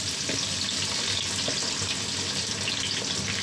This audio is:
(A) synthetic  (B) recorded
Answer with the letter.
B